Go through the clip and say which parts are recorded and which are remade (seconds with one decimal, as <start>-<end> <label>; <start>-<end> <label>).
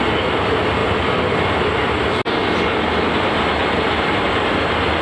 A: 0.0-5.0 recorded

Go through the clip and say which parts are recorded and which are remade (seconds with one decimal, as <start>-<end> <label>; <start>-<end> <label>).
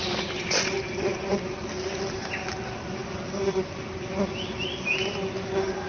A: 0.0-5.9 recorded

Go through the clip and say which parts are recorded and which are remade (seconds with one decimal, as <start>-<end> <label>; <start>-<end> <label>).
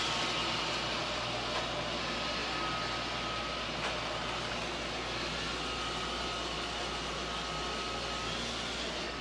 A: 0.0-9.2 recorded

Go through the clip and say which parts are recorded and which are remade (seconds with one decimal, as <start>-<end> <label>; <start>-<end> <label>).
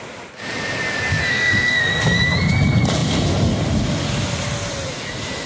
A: 0.0-1.3 recorded; 1.3-1.9 remade; 1.9-5.5 recorded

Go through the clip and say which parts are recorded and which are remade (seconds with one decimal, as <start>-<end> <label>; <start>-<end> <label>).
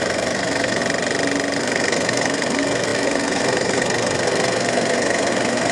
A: 0.0-0.8 remade; 0.8-1.6 recorded; 1.6-5.7 remade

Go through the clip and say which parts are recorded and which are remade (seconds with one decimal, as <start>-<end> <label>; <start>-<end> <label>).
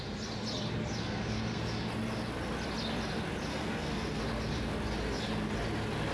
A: 0.0-1.0 recorded; 1.0-1.6 remade; 1.6-3.5 recorded; 3.5-4.2 remade; 4.2-6.1 recorded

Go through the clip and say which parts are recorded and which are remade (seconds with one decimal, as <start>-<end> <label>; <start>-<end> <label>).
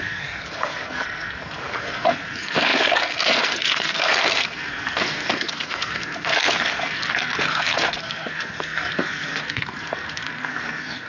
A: 0.0-11.1 remade